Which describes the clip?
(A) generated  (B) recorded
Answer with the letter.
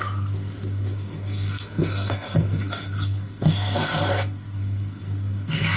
A